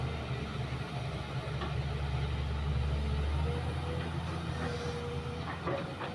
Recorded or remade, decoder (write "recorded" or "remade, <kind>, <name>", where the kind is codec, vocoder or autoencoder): recorded